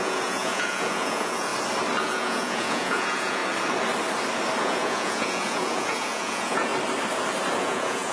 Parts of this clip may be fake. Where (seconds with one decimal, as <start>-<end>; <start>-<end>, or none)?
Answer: 0.0-1.5; 2.0-3.4; 4.6-6.7; 7.6-8.1

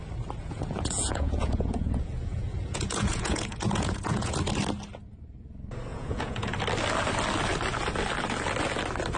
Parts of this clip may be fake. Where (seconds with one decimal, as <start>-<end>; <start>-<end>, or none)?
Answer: 0.4-4.4; 5.9-6.6

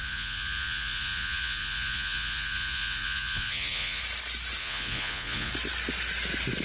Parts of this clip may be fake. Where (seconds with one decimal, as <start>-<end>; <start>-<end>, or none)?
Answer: 0.0-4.0; 4.6-5.5

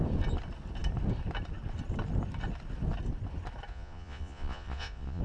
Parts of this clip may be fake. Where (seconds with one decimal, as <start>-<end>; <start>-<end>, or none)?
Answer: 3.7-5.2

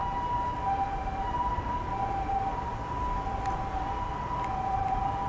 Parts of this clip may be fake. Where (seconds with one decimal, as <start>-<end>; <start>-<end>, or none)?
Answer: none

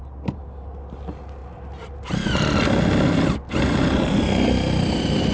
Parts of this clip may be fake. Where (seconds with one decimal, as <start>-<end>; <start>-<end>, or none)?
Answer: none

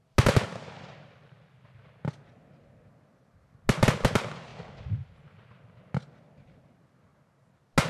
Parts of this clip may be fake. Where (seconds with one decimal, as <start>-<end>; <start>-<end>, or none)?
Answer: none